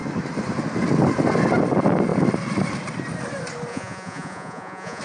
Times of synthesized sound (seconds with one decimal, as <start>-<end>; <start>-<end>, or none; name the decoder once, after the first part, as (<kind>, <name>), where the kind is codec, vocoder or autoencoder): 3.7-5.0 (vocoder, Vocos)

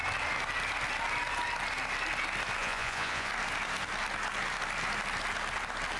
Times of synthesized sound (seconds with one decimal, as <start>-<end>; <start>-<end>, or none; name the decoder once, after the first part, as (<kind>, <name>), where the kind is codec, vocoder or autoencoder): 2.6-3.3 (vocoder, Vocos)